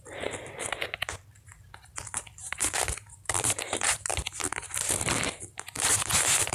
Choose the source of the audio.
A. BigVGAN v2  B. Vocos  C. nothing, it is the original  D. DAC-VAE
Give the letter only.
A